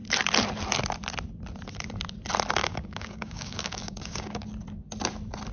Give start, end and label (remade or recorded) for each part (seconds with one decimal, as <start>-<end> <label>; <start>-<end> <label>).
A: 0.0-2.6 recorded; 2.6-4.4 remade; 4.4-5.5 recorded